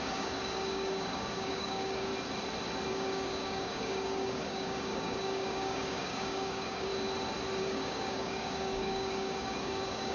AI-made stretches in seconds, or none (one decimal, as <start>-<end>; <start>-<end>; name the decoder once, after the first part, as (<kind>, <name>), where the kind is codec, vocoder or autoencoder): 0.0-2.1 (codec, DAC); 2.9-6.9; 7.6-10.1